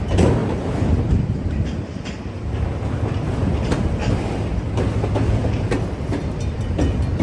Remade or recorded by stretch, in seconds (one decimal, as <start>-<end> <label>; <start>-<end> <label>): 0.0-4.0 remade; 4.0-4.5 recorded; 4.5-7.2 remade

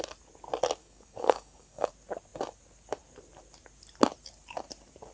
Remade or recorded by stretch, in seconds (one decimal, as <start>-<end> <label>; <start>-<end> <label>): 0.0-0.8 recorded; 0.8-1.9 remade; 1.9-5.1 recorded

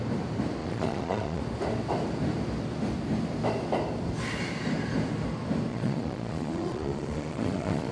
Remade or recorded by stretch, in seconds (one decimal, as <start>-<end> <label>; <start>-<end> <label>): 0.0-0.6 recorded; 0.6-1.4 remade; 1.4-5.7 recorded; 5.7-7.9 remade

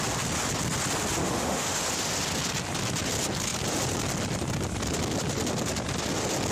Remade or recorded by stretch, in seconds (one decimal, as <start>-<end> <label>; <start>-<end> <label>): 0.0-1.2 recorded; 1.2-1.8 remade; 1.8-6.5 recorded

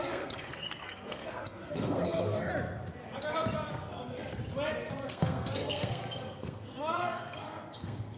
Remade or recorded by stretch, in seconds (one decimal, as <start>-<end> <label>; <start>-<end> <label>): 0.0-2.5 remade; 2.5-3.7 recorded; 3.7-4.4 remade; 4.4-5.1 recorded; 5.1-8.2 remade

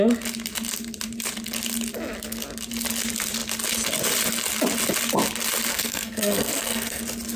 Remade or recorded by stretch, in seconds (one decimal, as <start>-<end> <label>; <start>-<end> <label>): 0.0-5.7 recorded; 5.7-7.0 remade; 7.0-7.4 recorded

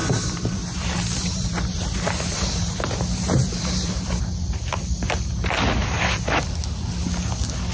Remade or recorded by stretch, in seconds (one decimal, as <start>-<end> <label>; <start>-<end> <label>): 0.0-4.1 remade; 4.1-5.8 recorded; 5.8-6.4 remade; 6.4-7.7 recorded